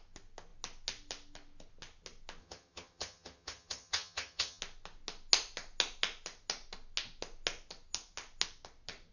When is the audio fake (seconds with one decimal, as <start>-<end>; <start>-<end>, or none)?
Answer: 2.4-4.6